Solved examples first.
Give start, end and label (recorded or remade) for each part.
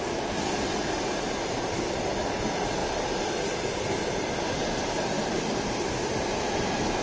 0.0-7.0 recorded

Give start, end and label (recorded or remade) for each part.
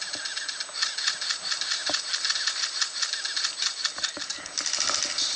0.0-5.4 recorded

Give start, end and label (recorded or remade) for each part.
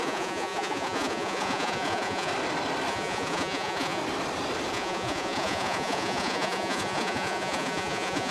0.0-2.3 remade; 2.3-2.9 recorded; 2.9-4.0 remade; 4.0-4.7 recorded; 4.7-8.3 remade